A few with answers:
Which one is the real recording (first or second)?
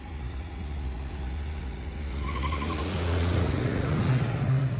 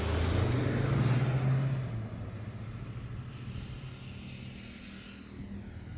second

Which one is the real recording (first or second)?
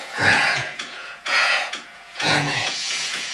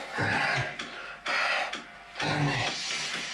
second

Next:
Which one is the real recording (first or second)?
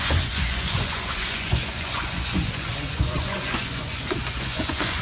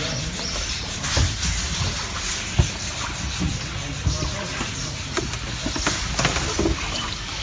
second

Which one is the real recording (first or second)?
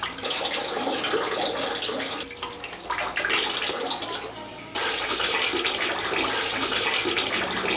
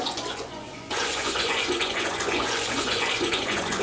first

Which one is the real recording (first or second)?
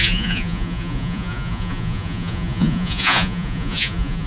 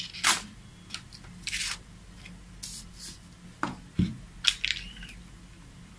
second